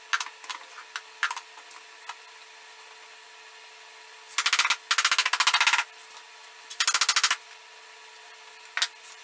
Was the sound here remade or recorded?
recorded